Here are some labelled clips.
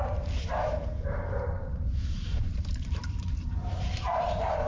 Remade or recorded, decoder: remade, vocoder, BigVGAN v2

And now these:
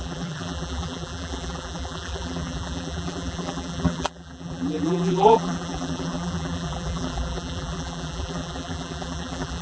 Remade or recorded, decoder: remade, vocoder, BigVGAN v2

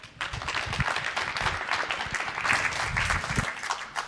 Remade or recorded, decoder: recorded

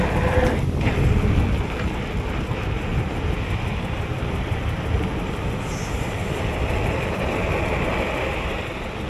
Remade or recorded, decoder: recorded